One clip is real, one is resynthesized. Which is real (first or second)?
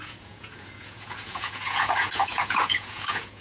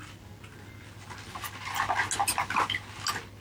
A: second